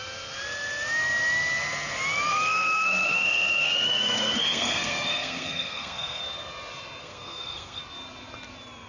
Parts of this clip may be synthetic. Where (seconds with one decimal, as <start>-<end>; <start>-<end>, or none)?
2.3-6.2; 7.0-7.8